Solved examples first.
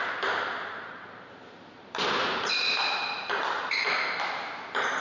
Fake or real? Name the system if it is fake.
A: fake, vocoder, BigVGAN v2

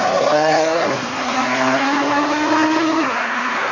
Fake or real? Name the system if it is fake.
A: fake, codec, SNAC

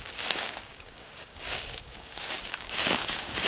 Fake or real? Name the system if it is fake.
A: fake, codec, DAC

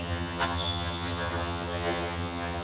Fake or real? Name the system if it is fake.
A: fake, vocoder, HiFi-GAN